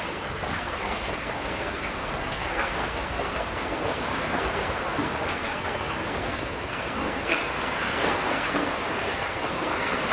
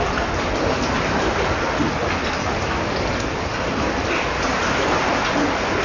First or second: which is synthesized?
first